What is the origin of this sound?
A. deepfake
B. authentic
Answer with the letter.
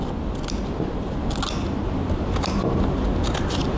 B